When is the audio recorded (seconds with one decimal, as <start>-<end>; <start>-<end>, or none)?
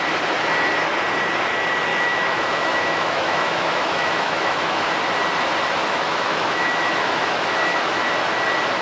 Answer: 0.0-1.9; 4.9-5.8; 8.1-8.8